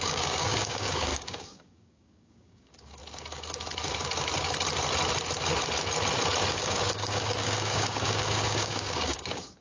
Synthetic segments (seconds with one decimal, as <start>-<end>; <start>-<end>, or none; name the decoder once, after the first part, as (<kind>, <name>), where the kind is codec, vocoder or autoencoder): 0.0-3.0 (codec, DAC); 6.5-9.6